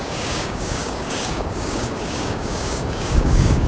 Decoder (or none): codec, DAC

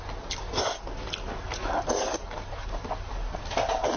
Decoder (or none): none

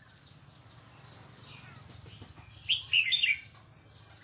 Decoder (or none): none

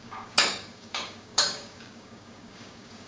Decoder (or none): codec, DAC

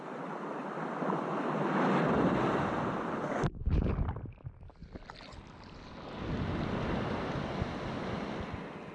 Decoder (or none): none